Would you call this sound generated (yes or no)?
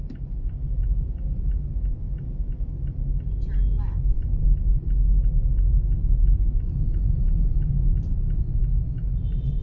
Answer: no